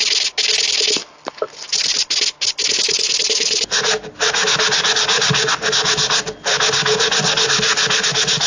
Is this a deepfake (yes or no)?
no